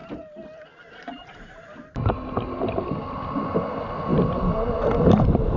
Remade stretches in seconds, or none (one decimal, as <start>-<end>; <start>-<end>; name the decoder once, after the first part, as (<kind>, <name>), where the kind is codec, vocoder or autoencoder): none